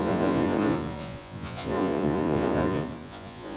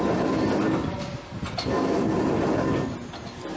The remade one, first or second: first